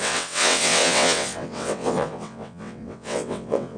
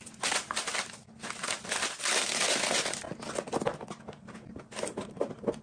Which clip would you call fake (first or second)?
first